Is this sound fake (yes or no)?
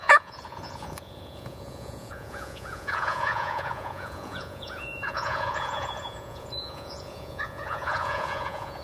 yes